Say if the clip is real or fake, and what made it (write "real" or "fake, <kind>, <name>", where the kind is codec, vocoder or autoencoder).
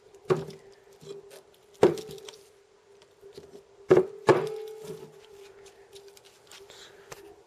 real